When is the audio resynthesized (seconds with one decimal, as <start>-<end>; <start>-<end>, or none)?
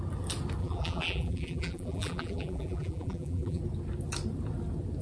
0.6-3.6